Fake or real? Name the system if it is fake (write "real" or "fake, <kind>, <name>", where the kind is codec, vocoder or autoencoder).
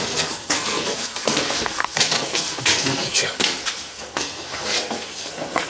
fake, codec, SNAC